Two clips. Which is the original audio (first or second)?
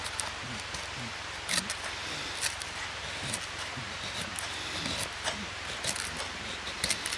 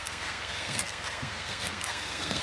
first